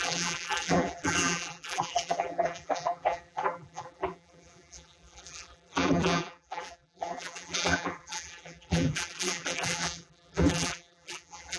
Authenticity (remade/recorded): remade